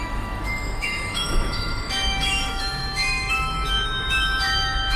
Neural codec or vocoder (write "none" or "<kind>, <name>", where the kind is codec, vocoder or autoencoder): autoencoder, DAC-VAE